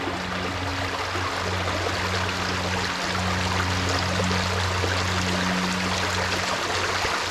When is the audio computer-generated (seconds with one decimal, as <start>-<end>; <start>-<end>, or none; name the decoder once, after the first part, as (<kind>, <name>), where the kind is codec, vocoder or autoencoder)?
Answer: none